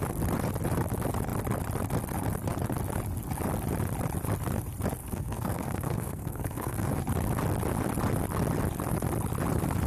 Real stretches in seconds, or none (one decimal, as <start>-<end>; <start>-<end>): 0.0-5.0; 6.9-9.9